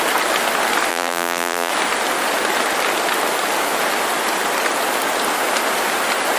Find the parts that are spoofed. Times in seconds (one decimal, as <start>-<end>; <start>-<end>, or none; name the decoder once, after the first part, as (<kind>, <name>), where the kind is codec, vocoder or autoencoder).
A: 0.9-1.7 (vocoder, BigVGAN v2)